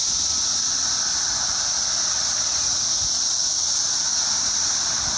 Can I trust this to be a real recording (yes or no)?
yes